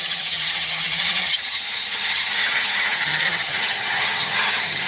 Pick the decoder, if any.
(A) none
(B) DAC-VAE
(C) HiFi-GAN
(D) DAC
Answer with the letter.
C